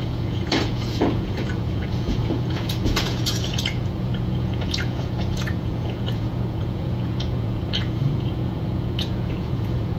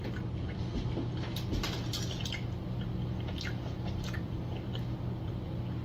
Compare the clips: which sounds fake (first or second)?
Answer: first